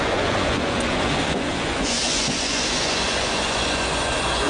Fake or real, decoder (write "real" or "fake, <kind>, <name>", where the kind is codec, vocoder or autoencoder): fake, vocoder, Vocos